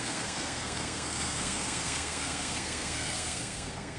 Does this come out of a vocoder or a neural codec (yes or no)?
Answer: yes